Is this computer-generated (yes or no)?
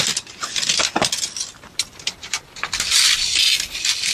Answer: no